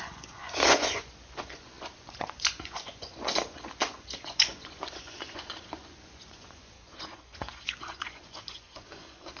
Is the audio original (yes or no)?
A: no